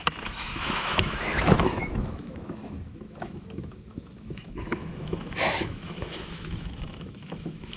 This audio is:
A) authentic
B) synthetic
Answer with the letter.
B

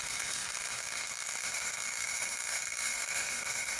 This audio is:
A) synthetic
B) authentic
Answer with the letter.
A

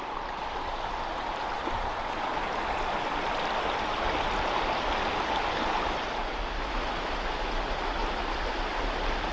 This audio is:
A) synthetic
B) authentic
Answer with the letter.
B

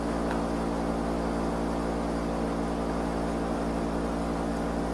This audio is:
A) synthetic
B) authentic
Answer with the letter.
B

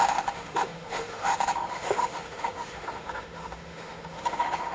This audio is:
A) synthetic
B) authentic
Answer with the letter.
A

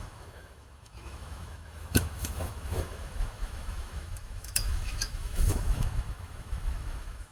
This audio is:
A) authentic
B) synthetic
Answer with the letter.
B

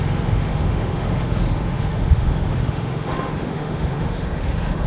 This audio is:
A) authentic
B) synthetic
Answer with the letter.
B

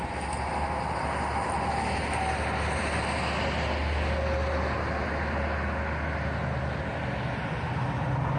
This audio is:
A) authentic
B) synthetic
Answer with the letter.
A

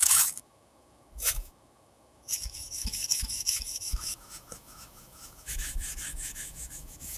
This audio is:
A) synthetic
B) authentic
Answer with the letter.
A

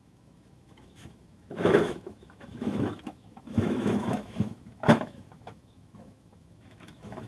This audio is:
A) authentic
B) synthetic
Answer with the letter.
B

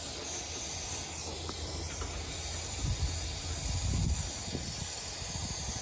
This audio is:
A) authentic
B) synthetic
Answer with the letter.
A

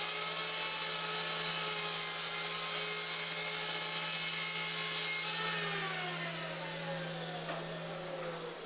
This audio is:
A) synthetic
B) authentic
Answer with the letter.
B